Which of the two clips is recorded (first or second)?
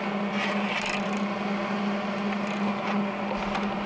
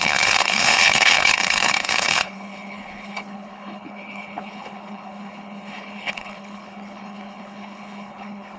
first